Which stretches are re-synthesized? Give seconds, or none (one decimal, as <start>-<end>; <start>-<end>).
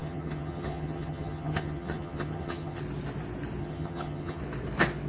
0.0-2.8; 3.6-4.4